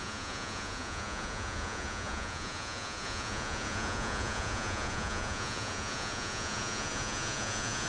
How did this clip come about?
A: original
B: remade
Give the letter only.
B